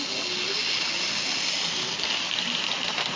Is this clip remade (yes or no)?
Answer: no